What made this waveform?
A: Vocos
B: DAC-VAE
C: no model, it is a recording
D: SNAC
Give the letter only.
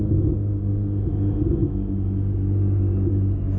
C